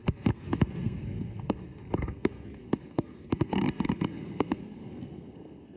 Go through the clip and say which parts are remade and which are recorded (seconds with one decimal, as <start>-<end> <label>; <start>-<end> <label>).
0.0-5.8 remade